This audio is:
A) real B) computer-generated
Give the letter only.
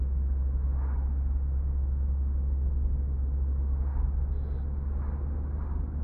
A